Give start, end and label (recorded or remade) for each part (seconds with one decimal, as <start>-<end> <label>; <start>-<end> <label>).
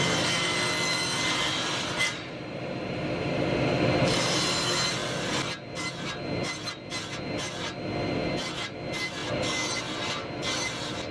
0.0-11.1 recorded